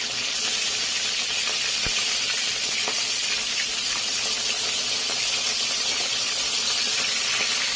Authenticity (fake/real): real